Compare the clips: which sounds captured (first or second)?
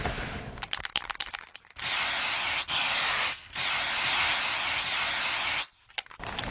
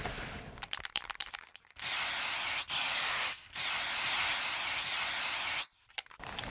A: first